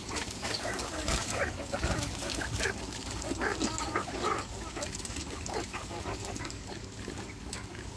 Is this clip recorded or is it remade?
remade